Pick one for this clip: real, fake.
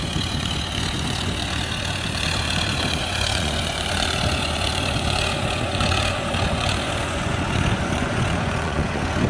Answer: fake